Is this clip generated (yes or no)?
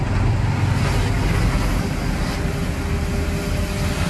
no